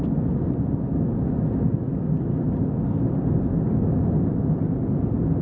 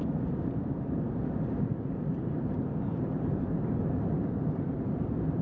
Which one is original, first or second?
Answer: first